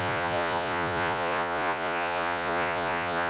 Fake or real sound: fake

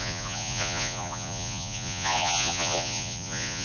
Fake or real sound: fake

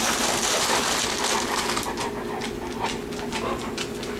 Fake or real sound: real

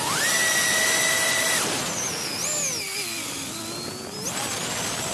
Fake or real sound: real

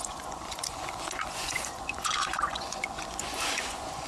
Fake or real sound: fake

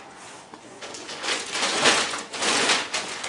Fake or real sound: fake